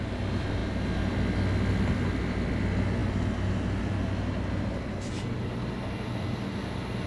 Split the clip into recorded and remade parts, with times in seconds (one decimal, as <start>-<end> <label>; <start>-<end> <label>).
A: 0.0-7.1 recorded

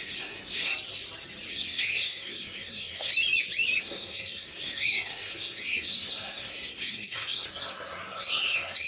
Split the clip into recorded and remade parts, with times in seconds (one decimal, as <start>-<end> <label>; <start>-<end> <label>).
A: 0.0-0.7 remade; 0.7-1.5 recorded; 1.5-3.1 remade; 3.1-3.8 recorded; 3.8-8.9 remade

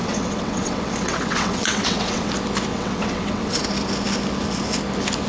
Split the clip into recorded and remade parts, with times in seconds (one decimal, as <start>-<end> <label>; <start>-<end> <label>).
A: 0.0-2.3 remade; 2.3-2.7 recorded; 2.7-3.6 remade; 3.6-5.3 recorded

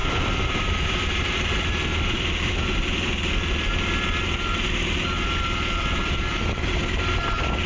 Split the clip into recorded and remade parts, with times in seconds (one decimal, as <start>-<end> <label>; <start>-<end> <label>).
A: 0.0-7.7 remade